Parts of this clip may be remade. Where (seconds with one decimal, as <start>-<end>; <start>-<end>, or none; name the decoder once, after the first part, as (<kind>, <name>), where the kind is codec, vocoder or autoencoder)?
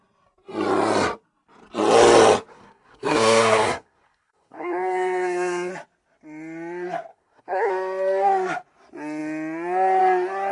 2.5-5.7 (codec, SNAC); 7.1-7.7